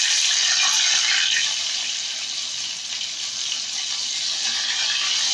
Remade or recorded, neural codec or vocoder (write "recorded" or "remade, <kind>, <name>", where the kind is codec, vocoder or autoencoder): recorded